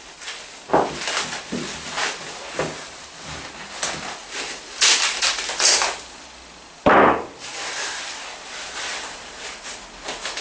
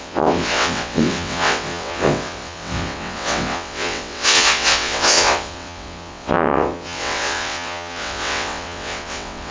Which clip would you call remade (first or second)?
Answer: second